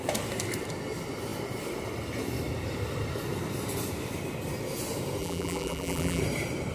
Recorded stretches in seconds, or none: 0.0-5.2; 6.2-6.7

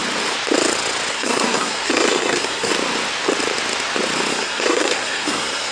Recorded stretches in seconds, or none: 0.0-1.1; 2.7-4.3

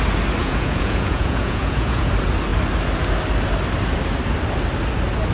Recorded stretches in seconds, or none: 0.0-0.4; 2.1-5.3

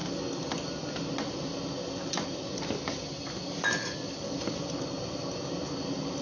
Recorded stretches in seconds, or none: 0.0-6.2

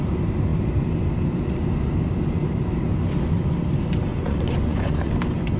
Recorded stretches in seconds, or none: 0.0-4.1; 5.1-5.6

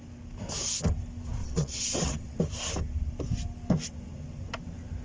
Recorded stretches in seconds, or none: 0.0-1.4; 2.4-5.0